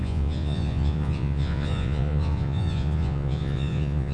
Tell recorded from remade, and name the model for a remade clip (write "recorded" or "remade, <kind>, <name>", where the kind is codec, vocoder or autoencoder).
remade, vocoder, Vocos